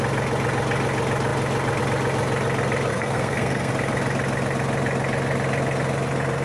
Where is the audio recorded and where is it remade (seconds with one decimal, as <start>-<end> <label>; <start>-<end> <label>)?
0.0-2.9 recorded; 2.9-3.7 remade; 3.7-6.4 recorded